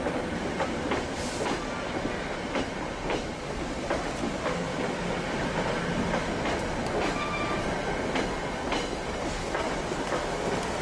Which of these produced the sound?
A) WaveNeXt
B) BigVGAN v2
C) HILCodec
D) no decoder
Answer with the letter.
D